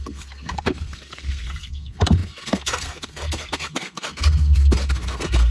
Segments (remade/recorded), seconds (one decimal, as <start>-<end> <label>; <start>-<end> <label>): 0.0-5.5 remade